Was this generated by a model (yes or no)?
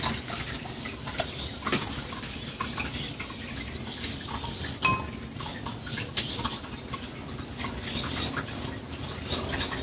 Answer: no